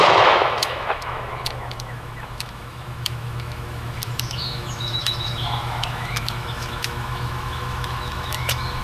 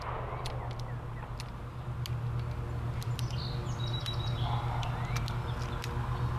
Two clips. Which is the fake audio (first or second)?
first